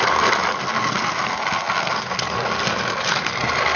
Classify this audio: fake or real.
real